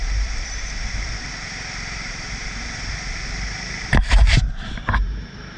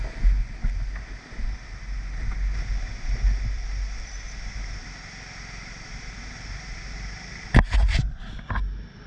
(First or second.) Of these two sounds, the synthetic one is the first